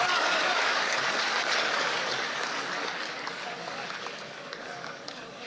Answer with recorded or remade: remade